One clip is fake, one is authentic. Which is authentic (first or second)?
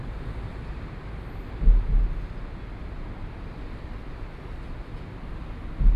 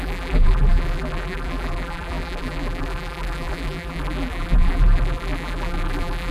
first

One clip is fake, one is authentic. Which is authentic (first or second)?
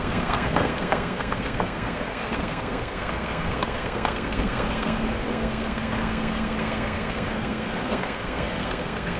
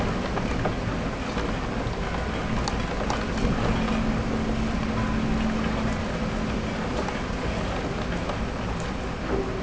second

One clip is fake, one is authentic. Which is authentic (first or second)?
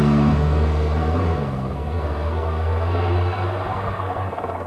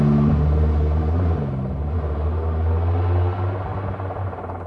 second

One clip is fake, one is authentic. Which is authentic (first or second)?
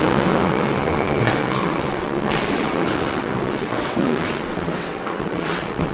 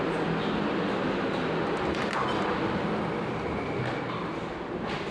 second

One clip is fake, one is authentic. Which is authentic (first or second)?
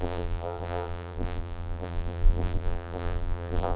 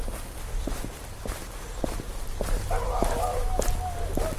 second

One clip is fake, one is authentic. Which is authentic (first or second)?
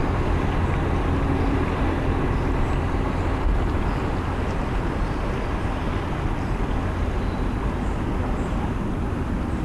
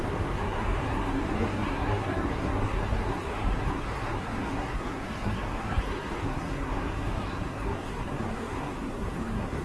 first